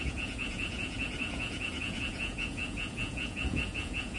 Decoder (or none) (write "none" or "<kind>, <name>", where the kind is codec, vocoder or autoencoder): vocoder, Vocos